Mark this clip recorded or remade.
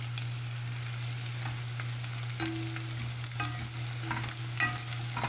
recorded